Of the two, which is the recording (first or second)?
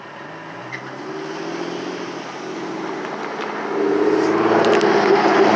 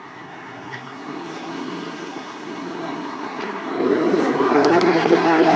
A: first